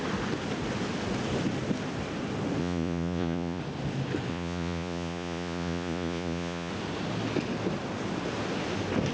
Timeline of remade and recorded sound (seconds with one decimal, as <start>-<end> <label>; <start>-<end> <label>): 0.0-2.6 recorded; 2.6-3.6 remade; 3.6-4.3 recorded; 4.3-6.7 remade; 6.7-9.1 recorded